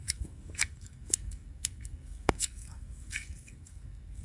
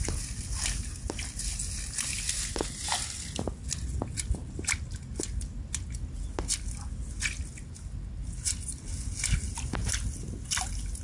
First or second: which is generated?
first